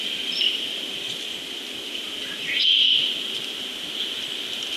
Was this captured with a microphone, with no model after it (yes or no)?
yes